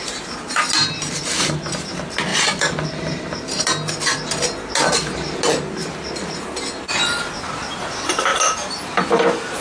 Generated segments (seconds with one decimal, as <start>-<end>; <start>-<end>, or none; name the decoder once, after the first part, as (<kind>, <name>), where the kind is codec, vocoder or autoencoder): 0.8-1.4 (vocoder, BigVGAN v2); 2.3-4.7; 5.8-7.0; 8.3-9.0

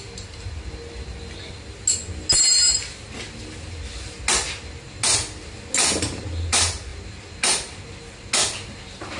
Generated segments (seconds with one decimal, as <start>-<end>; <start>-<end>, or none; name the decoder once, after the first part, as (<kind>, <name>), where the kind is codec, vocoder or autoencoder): none

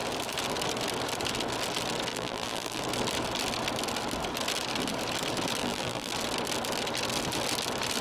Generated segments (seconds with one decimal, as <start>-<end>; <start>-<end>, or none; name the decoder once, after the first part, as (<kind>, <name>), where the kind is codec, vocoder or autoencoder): 2.1-2.8 (vocoder, BigVGAN v2); 5.6-6.1

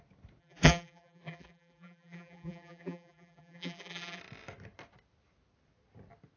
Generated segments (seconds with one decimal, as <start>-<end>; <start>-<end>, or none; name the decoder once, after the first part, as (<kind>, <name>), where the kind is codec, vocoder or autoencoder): 0.4-4.2 (vocoder, BigVGAN v2)

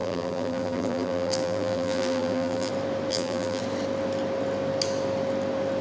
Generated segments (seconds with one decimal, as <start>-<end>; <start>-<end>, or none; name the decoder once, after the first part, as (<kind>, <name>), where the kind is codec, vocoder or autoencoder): 0.0-2.7 (vocoder, BigVGAN v2); 3.1-3.6

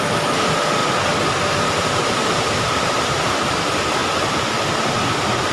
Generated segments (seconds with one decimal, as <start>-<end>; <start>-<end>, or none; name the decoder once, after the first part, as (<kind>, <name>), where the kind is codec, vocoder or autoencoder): none

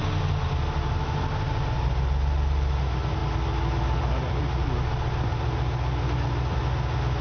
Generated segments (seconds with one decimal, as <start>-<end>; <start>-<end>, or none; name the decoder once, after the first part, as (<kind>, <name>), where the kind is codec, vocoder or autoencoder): none

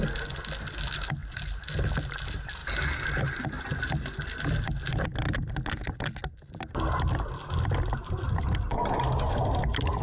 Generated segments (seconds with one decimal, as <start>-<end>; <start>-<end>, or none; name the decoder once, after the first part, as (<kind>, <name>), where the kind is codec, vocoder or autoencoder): 1.2-1.7 (vocoder, BigVGAN v2)